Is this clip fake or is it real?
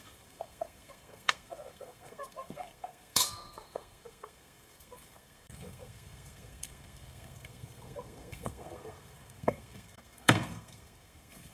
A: fake